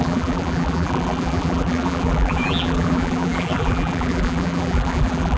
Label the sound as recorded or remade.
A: remade